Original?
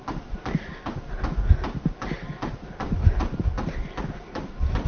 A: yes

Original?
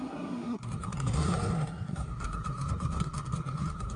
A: no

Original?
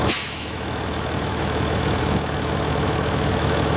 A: no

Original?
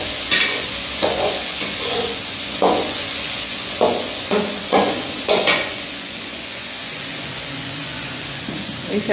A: no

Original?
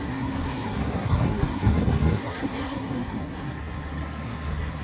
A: no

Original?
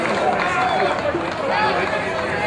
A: yes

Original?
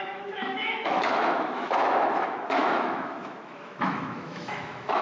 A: no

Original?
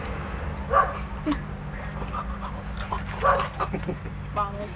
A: yes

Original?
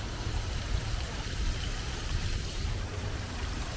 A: no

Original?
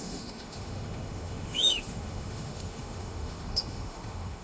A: no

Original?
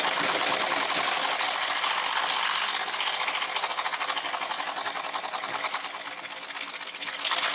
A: yes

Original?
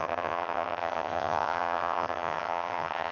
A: no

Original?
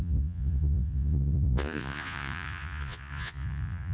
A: no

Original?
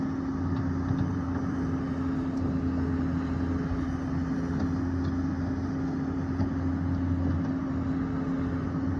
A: yes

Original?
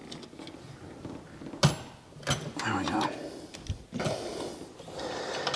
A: yes